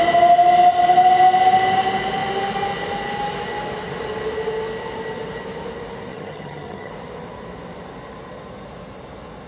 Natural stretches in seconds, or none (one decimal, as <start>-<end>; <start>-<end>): 0.0-6.1; 6.9-9.5